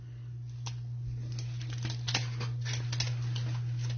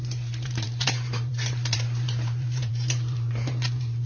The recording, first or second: first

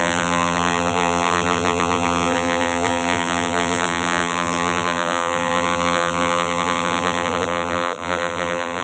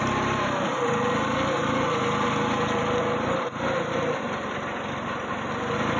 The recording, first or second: second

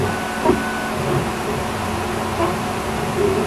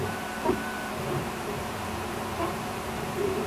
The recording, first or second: first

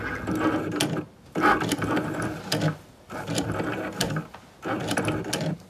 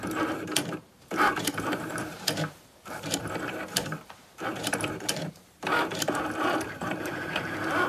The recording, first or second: first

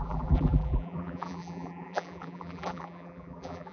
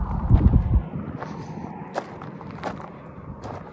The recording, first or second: second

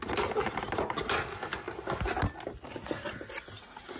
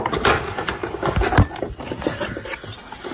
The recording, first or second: first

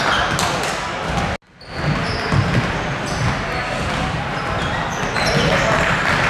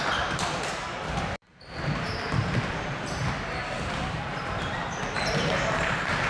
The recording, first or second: first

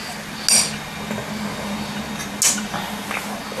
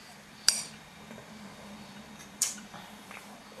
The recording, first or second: first